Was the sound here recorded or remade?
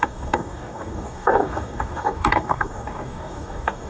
remade